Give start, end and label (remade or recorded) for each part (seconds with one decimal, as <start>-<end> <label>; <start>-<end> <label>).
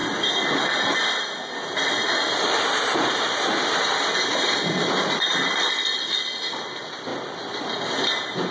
0.0-8.5 recorded